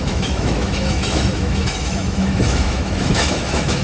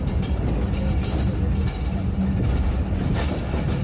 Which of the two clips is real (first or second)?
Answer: second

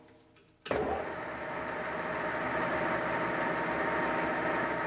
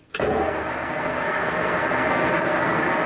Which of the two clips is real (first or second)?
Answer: first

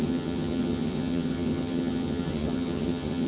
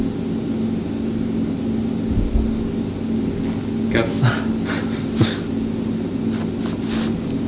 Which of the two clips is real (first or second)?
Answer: second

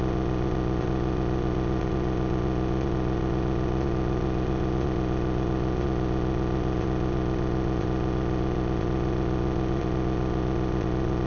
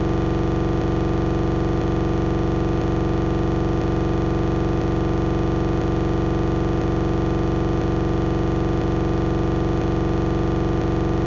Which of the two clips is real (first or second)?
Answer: second